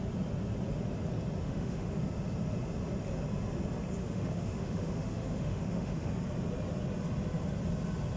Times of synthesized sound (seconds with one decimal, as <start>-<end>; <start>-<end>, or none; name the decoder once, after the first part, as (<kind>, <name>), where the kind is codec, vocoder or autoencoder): 1.4-2.0 (autoencoder, DAC-VAE); 4.0-6.1